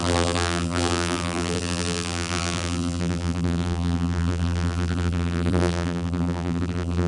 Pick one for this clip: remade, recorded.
remade